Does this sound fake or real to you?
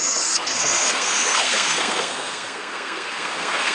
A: fake